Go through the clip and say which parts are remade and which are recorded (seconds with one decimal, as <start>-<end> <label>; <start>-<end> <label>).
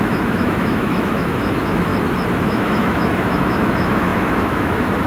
0.0-1.9 remade; 1.9-2.4 recorded; 2.4-5.1 remade